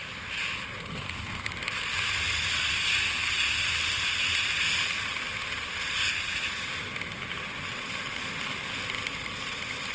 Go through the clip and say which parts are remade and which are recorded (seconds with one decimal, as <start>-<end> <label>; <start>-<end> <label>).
0.0-9.9 recorded